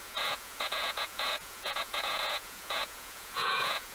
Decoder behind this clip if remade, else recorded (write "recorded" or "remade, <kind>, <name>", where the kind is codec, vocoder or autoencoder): remade, vocoder, Vocos